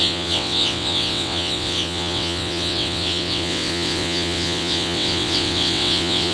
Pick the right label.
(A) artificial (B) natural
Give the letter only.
A